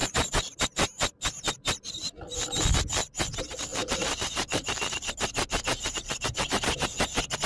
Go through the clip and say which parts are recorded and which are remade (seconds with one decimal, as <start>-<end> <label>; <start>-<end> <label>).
0.0-0.6 remade; 0.6-3.8 recorded; 3.8-6.9 remade; 6.9-7.5 recorded